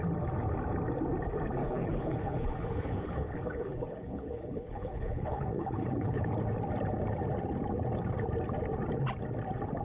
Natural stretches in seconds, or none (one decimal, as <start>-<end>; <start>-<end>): 0.0-1.6; 6.3-9.8

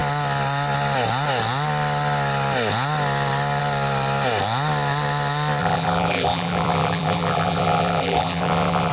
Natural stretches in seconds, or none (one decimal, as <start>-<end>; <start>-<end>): 0.0-5.6